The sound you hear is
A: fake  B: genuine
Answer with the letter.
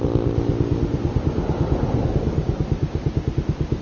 B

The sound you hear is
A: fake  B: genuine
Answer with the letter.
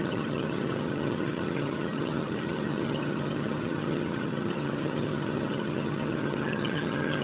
A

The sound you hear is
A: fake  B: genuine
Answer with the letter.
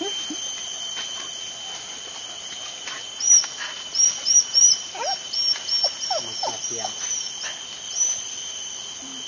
B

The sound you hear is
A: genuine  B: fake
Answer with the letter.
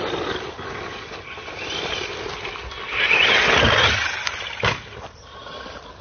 A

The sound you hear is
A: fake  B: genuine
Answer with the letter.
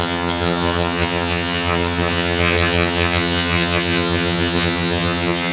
A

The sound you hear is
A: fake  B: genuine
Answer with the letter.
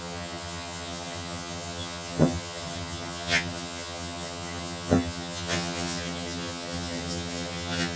A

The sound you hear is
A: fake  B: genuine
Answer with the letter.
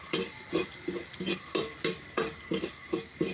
B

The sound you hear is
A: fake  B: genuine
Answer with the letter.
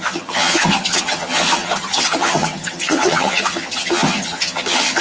A